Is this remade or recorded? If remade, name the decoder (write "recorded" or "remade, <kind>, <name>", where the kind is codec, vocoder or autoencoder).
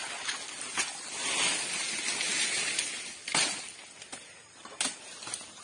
recorded